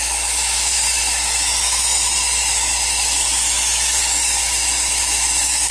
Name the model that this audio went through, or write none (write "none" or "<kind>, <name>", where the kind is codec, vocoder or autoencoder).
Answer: autoencoder, DAC-VAE